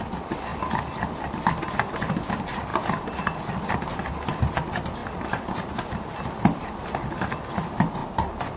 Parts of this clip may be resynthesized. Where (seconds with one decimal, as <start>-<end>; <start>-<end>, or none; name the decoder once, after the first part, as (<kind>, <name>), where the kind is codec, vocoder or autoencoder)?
0.5-1.5 (vocoder, BigVGAN v2); 5.0-5.7; 8.0-8.6